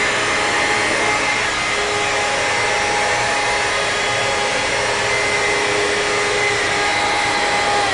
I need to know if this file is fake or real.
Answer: real